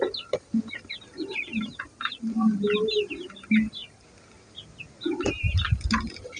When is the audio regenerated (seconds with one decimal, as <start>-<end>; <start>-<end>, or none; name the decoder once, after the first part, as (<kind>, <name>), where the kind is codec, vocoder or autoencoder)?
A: none